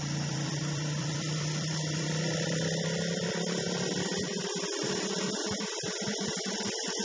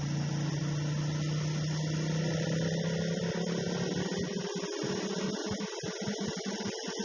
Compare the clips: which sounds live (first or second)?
second